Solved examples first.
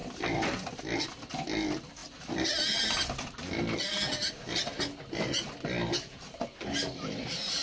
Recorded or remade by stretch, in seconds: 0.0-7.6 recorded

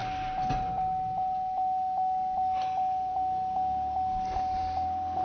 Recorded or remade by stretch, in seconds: 0.0-5.2 recorded

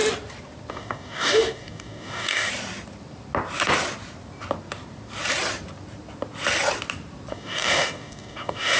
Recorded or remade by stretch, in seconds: 0.0-0.7 recorded; 0.7-2.5 remade; 2.5-7.3 recorded; 7.3-8.8 remade

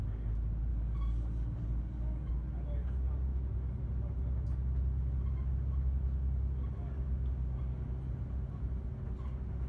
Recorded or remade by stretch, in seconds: 0.0-0.7 recorded; 0.7-2.3 remade; 2.3-9.7 recorded

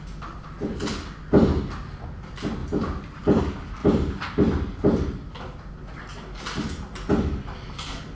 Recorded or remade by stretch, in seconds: 0.0-8.1 recorded

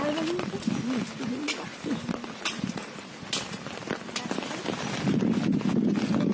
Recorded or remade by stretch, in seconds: 0.0-6.3 recorded

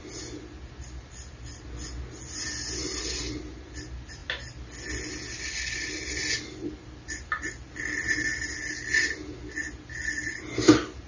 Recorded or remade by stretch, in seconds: 0.0-11.1 recorded